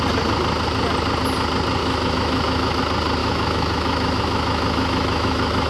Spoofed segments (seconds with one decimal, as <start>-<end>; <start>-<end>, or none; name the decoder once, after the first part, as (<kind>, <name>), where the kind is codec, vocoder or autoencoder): 1.8-2.8 (autoencoder, DAC-VAE); 3.2-5.7